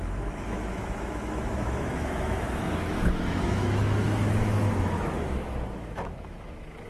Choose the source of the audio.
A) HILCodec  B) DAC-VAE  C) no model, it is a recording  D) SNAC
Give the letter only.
B